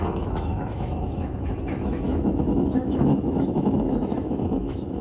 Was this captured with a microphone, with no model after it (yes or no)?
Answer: no